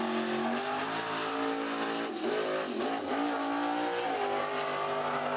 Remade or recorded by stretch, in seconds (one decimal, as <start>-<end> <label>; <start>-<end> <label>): 0.0-5.4 recorded